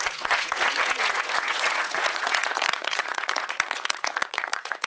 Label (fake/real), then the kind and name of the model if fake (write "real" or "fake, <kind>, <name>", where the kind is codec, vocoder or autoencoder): fake, vocoder, Vocos